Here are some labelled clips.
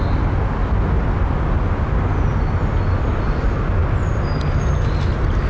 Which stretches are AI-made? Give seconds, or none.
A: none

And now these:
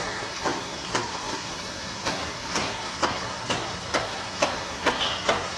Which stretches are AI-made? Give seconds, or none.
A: 0.0-5.6 (codec, SNAC)